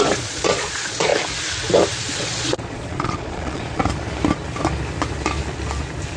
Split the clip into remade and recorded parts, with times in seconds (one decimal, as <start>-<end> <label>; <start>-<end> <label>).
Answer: 0.0-1.1 remade; 1.1-2.1 recorded; 2.1-3.8 remade; 3.8-6.2 recorded